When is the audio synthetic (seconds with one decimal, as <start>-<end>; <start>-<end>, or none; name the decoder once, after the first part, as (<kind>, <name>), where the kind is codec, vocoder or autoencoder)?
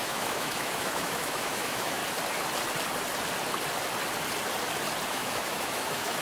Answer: 0.0-2.0 (autoencoder, DAC-VAE); 5.1-6.2